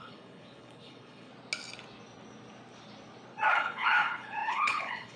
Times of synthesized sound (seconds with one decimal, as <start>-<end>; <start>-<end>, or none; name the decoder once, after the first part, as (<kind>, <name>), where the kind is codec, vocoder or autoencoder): 0.0-1.3 (codec, HILCodec); 3.5-5.2